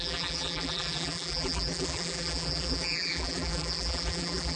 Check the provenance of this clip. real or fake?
fake